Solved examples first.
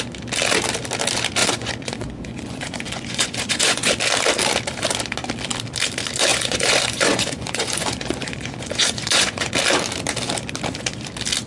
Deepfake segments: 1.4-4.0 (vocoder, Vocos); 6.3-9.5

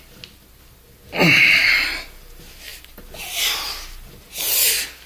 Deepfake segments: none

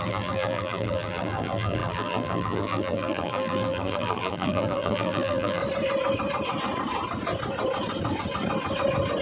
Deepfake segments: 0.0-5.6 (vocoder, BigVGAN v2)